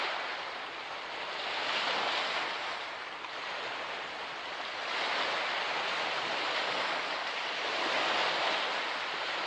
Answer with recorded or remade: recorded